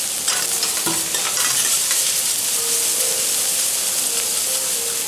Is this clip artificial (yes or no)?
no